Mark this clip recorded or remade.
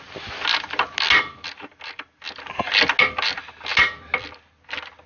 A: recorded